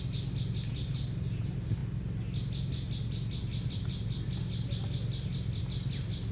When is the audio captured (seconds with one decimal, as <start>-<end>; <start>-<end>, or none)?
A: 0.0-6.3